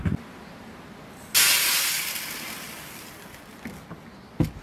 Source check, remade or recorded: recorded